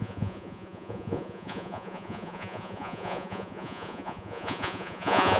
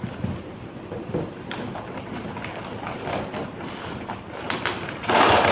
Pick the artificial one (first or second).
first